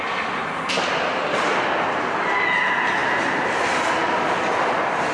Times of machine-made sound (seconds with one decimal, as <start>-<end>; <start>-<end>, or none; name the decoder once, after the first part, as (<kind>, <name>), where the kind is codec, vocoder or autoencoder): none